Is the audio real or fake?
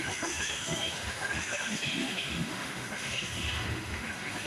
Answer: fake